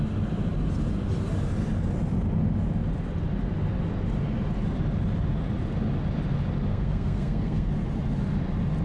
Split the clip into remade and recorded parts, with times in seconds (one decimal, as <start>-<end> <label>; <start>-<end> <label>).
0.0-6.7 recorded; 6.7-7.7 remade; 7.7-8.8 recorded